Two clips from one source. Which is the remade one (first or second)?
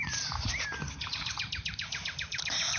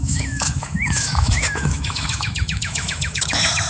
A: second